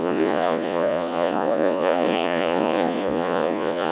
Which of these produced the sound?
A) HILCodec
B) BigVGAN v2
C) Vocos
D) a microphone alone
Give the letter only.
C